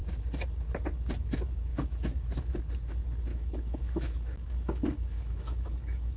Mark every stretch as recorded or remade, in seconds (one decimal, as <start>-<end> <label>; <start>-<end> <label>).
0.0-1.7 recorded; 1.7-2.3 remade; 2.3-3.3 recorded; 3.3-6.2 remade